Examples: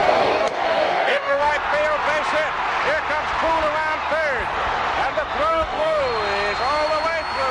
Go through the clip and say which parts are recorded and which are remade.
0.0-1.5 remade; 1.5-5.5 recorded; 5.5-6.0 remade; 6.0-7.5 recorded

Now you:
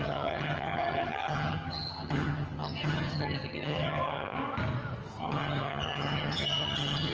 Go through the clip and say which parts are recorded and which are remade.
0.0-4.4 remade; 4.4-5.2 recorded; 5.2-7.1 remade

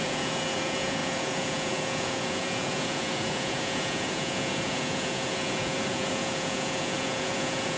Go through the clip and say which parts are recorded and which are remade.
0.0-7.8 remade

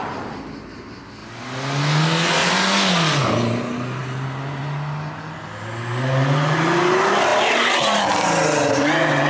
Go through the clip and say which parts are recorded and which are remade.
0.0-9.3 recorded

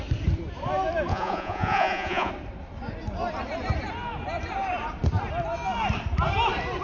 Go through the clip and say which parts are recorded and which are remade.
0.0-1.1 recorded; 1.1-2.3 remade; 2.3-6.8 recorded